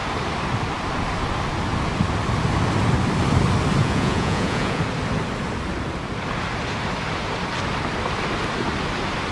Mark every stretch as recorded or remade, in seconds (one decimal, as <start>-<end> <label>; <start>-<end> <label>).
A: 0.0-3.8 recorded; 3.8-4.8 remade; 4.8-9.3 recorded